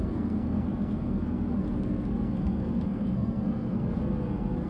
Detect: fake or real fake